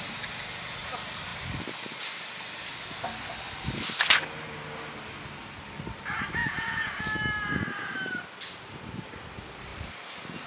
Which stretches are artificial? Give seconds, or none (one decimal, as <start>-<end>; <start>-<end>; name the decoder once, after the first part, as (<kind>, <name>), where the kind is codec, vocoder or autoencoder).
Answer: 6.4-6.9 (vocoder, Vocos)